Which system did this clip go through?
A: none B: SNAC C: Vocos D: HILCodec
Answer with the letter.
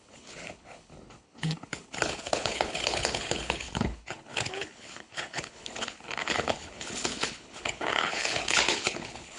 D